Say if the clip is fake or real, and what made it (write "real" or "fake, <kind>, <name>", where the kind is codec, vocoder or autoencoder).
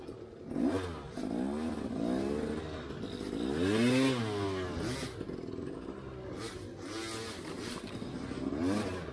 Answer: real